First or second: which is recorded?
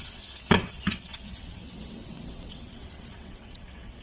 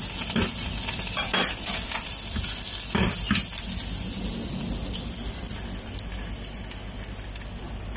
second